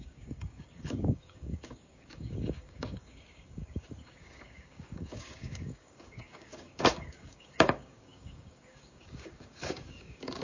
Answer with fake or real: fake